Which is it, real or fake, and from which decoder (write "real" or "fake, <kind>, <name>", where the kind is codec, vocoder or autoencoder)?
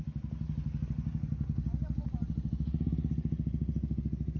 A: real